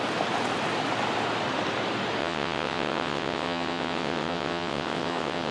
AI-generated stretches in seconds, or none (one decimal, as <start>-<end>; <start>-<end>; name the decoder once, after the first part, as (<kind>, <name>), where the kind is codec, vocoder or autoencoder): 2.2-5.5 (vocoder, WaveNeXt)

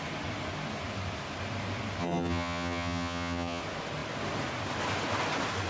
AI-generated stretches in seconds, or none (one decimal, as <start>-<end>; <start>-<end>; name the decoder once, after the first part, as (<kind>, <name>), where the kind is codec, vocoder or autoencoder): 2.0-3.6 (vocoder, HiFi-GAN)

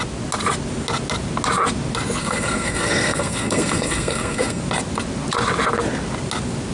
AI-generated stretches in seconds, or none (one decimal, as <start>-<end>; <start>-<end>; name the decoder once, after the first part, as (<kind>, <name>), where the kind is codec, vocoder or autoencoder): 2.2-4.6 (codec, SNAC)

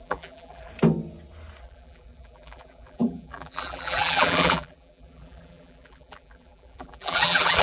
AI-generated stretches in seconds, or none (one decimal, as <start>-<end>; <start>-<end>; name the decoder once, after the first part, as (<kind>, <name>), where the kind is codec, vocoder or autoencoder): 0.0-0.7 (vocoder, BigVGAN v2); 1.6-7.6

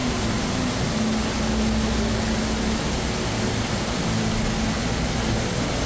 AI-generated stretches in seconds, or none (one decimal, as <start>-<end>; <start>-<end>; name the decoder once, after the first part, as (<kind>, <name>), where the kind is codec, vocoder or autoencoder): none

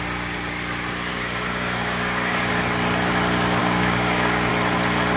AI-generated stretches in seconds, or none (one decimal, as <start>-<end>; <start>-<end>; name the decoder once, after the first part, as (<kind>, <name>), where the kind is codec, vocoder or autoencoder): 1.1-2.5 (codec, DAC); 3.6-4.5